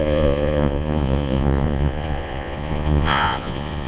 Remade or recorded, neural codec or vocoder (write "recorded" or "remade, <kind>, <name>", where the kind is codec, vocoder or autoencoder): remade, vocoder, Vocos